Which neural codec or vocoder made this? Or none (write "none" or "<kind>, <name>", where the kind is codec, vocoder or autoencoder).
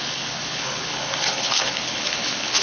codec, HILCodec